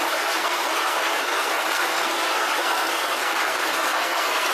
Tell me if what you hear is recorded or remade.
remade